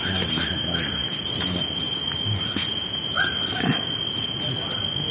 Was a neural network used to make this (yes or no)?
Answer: no